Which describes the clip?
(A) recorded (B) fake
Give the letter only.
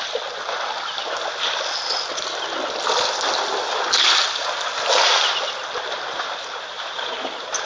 A